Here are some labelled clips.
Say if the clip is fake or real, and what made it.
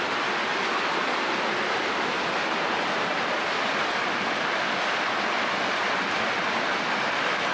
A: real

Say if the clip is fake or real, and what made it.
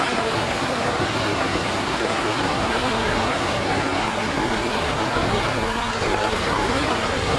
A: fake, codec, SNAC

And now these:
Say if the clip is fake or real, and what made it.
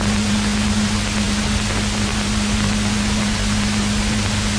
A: real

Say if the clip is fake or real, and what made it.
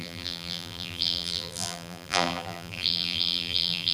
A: fake, vocoder, BigVGAN v2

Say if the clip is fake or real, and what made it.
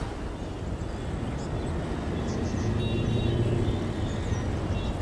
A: real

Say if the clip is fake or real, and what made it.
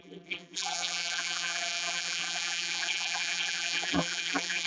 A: fake, vocoder, BigVGAN v2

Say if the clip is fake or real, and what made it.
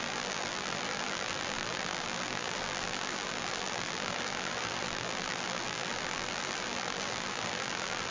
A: fake, vocoder, BigVGAN v2